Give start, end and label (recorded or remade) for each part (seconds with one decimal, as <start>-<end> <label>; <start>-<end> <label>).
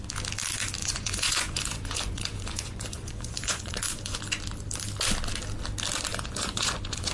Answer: 0.0-0.8 recorded; 0.8-4.2 remade; 4.2-6.1 recorded; 6.1-7.1 remade